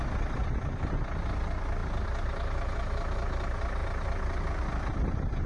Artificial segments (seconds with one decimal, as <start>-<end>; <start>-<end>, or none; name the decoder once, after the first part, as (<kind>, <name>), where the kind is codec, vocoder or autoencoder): none